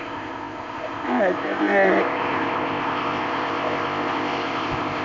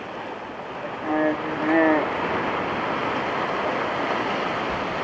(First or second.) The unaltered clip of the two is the second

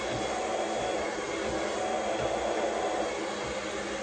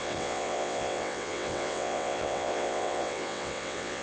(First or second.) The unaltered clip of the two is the first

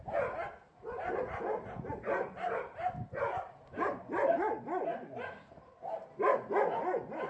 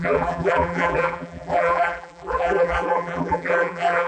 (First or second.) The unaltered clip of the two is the first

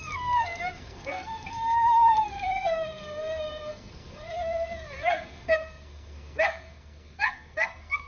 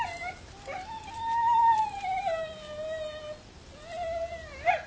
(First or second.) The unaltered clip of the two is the second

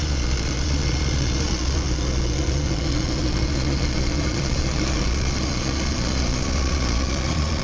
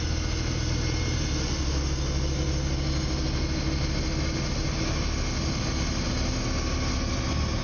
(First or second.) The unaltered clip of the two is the second